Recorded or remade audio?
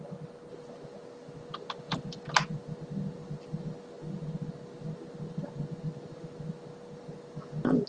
recorded